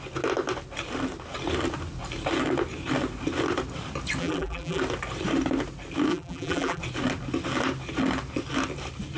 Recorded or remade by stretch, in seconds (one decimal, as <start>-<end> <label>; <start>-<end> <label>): 0.0-4.2 recorded; 4.2-4.8 remade; 4.8-6.1 recorded; 6.1-6.8 remade; 6.8-9.2 recorded